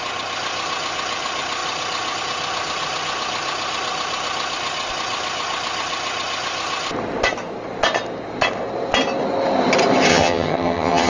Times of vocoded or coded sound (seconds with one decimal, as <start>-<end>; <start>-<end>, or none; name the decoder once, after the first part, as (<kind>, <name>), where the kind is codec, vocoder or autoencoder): 10.1-11.1 (vocoder, HiFi-GAN)